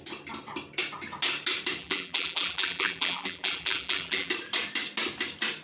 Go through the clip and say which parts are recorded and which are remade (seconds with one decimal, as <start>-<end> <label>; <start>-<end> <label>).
0.0-1.8 recorded; 1.8-4.3 remade; 4.3-5.6 recorded